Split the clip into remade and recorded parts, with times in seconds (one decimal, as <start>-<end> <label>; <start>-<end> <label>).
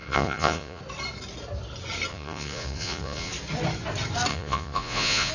0.0-0.8 remade; 0.8-2.1 recorded; 2.1-3.3 remade; 3.3-4.3 recorded; 4.3-5.3 remade